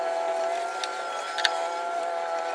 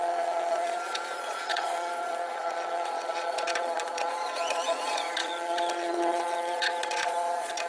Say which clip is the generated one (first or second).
second